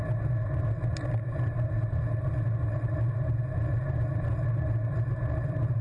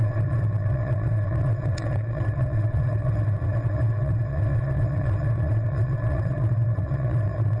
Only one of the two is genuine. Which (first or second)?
first